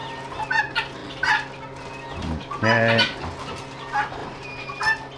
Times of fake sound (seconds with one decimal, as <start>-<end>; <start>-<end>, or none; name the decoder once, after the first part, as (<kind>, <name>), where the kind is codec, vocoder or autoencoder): 4.2-4.7 (vocoder, BigVGAN v2)